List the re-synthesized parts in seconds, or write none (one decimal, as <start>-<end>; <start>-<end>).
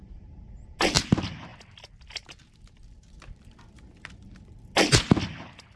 none